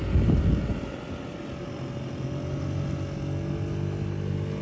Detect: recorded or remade recorded